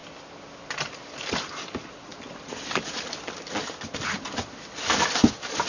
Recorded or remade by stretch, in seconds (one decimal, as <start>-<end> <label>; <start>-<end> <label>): 0.0-5.7 recorded